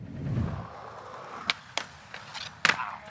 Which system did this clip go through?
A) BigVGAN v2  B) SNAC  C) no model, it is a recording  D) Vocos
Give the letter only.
C